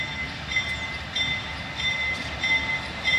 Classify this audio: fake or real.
real